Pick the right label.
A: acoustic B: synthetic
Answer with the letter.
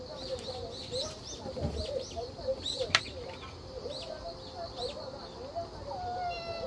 A